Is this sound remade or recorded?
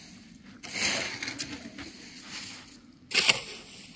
recorded